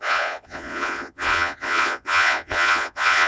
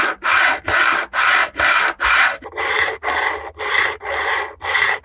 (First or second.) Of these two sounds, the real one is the second